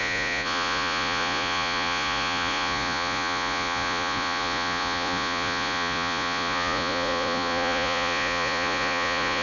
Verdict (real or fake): fake